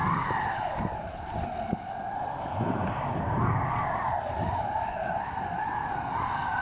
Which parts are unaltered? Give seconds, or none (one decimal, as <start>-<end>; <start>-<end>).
0.0-6.6